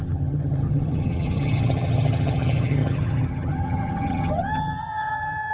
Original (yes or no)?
no